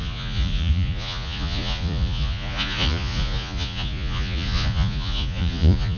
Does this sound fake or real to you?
fake